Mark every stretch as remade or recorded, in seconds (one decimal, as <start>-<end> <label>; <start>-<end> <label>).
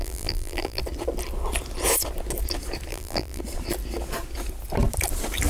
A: 0.0-0.8 remade; 0.8-2.9 recorded; 2.9-3.4 remade; 3.4-5.5 recorded